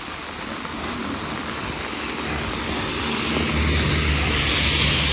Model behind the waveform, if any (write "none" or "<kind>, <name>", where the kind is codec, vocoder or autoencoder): none